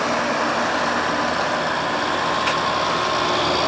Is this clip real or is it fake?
real